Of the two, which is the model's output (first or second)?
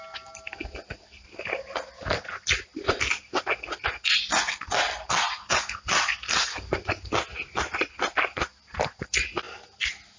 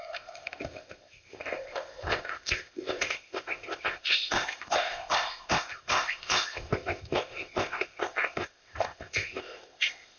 second